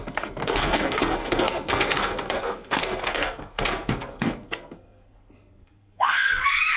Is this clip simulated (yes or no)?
yes